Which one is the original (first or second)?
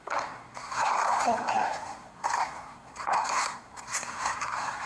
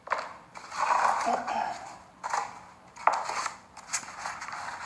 second